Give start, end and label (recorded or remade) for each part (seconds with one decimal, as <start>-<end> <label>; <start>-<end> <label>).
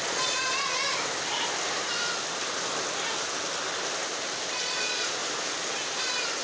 0.0-0.8 remade; 0.8-4.5 recorded; 4.5-5.2 remade; 5.2-6.4 recorded